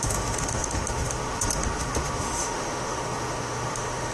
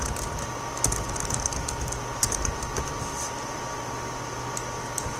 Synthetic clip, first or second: first